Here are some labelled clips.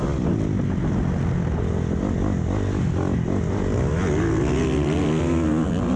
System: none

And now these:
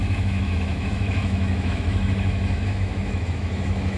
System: autoencoder, DAC-VAE